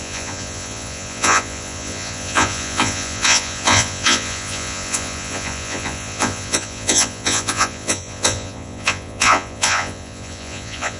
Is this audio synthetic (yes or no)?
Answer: yes